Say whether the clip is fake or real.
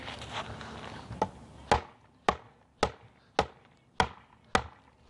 real